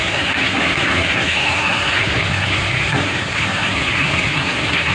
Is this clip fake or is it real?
fake